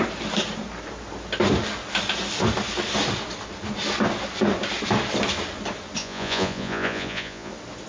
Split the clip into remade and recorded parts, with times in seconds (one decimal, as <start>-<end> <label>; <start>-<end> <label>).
0.0-6.0 recorded; 6.0-7.5 remade; 7.5-7.9 recorded